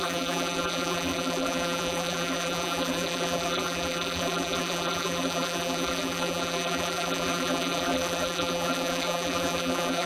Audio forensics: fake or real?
fake